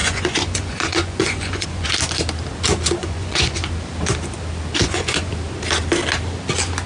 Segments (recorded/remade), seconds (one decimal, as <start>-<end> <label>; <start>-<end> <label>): 0.0-1.9 remade; 1.9-3.0 recorded; 3.0-3.7 remade; 3.7-4.8 recorded; 4.8-5.3 remade; 5.3-6.9 recorded